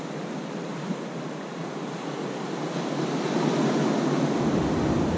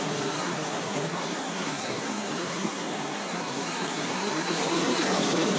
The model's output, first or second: second